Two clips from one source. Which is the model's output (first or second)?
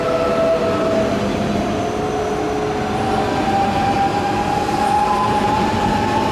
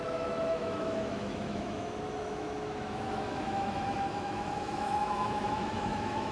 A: second